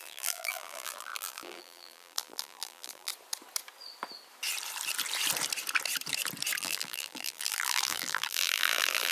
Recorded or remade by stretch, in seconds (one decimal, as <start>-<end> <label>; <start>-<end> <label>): 0.0-3.1 remade; 3.1-6.6 recorded; 6.6-9.1 remade